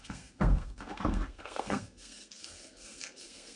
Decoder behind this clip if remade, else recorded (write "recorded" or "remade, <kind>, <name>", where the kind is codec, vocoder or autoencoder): remade, codec, SNAC